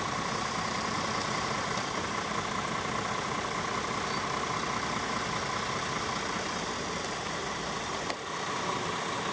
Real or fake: fake